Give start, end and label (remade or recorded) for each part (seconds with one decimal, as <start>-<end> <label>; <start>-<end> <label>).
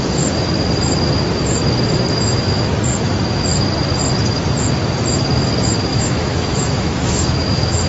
0.0-2.1 recorded; 2.1-2.7 remade; 2.7-5.9 recorded; 5.9-7.9 remade